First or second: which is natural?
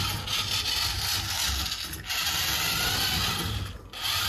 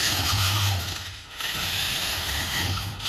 first